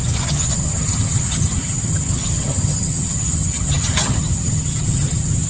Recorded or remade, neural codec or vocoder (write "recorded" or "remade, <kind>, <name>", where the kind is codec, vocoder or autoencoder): remade, vocoder, HiFi-GAN